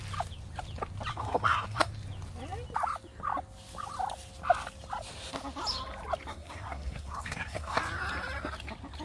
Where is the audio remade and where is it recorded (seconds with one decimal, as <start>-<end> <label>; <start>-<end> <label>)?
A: 0.0-1.1 recorded; 1.1-1.9 remade; 1.9-6.3 recorded; 6.3-7.8 remade; 7.8-9.0 recorded